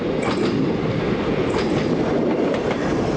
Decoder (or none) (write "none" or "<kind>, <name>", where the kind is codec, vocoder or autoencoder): vocoder, BigVGAN v2